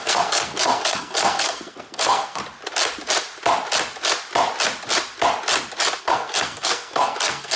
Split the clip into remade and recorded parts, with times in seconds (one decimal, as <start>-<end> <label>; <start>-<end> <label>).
0.0-2.4 remade; 2.4-6.0 recorded; 6.0-7.6 remade